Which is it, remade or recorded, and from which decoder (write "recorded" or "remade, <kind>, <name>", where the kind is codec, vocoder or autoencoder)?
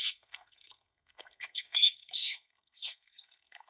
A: remade, codec, SNAC